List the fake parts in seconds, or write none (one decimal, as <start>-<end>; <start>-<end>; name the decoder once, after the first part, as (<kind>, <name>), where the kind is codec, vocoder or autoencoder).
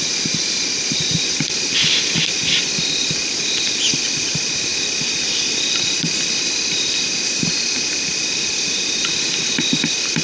none